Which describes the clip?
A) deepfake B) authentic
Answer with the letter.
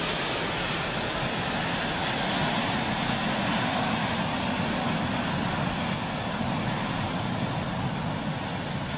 B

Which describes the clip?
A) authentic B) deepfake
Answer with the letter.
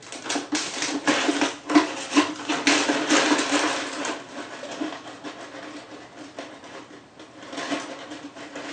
A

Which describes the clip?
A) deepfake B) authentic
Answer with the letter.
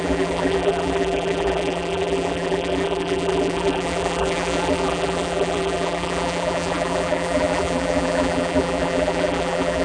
A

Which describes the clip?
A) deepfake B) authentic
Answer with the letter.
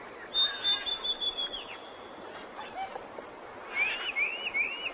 B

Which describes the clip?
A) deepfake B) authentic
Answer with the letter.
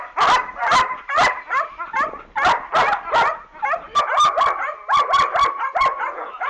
B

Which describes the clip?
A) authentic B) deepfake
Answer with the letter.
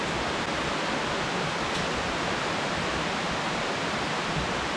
A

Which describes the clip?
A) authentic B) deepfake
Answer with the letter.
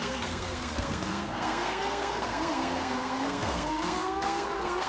B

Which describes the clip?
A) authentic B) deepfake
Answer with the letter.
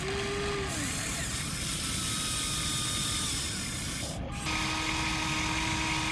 A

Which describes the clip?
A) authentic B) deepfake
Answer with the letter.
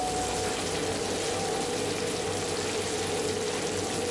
A